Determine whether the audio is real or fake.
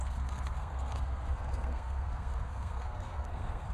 fake